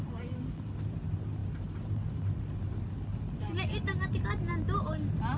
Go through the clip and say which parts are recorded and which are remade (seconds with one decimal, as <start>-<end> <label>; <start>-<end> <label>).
0.0-5.4 recorded